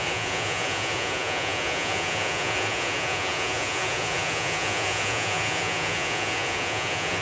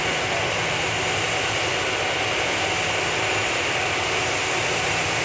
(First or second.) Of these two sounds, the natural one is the second